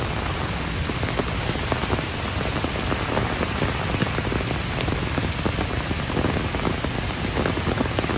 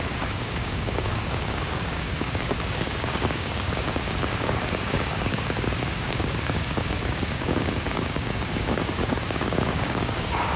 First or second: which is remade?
second